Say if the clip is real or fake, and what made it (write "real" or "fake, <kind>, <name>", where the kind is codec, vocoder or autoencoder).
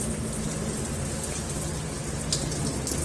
real